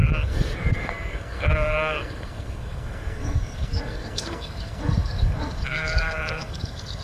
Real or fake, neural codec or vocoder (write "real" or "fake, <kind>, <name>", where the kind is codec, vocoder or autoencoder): fake, codec, SNAC